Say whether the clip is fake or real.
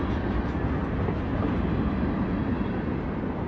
real